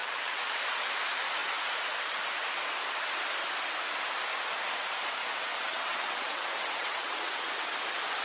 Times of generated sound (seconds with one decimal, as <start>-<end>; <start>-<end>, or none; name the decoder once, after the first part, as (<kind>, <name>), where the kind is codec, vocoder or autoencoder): 0.0-0.9 (vocoder, WaveNeXt); 5.2-7.5